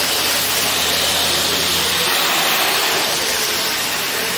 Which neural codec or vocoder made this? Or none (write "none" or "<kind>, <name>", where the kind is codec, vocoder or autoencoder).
vocoder, BigVGAN v2